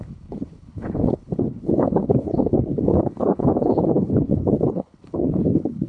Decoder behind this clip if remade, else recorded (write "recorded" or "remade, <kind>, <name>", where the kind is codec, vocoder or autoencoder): remade, codec, HILCodec